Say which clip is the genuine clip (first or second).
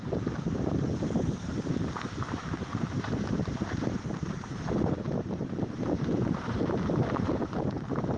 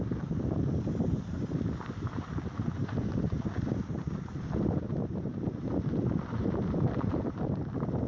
second